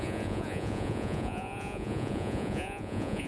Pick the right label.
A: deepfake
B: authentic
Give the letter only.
A